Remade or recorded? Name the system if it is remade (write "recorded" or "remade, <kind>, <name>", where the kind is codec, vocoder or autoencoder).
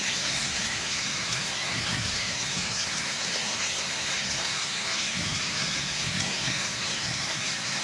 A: remade, codec, SNAC